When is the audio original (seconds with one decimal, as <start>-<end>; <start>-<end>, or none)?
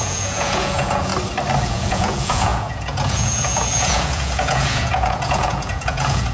1.1-1.6